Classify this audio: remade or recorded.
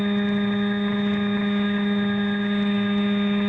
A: recorded